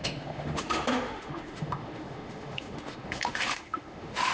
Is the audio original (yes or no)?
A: no